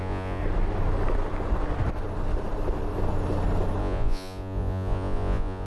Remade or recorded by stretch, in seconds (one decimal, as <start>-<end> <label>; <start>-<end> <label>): 0.0-0.4 remade; 0.4-3.8 recorded; 3.8-5.7 remade